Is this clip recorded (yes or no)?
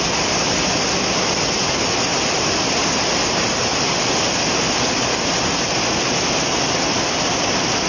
yes